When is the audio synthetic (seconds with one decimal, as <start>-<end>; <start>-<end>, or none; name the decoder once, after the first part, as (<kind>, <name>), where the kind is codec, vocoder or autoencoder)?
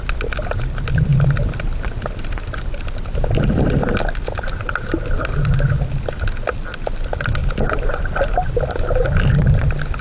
7.4-9.3 (vocoder, BigVGAN v2)